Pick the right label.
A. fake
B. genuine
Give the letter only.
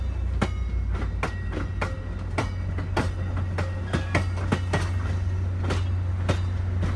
B